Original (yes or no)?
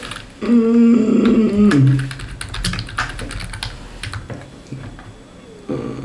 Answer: yes